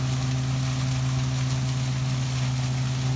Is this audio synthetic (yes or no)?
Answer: no